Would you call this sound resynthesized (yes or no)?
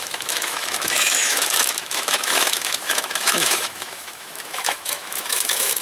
yes